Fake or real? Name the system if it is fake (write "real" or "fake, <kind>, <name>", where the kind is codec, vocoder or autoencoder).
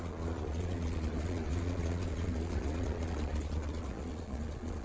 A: fake, vocoder, Vocos